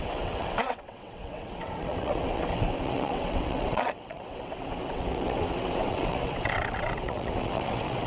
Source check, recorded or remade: remade